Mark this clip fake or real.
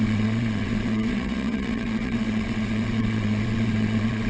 fake